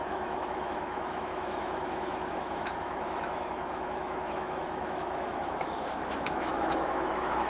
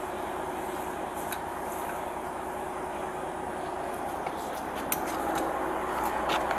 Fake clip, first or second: first